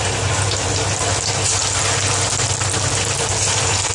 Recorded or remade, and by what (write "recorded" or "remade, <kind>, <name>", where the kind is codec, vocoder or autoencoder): recorded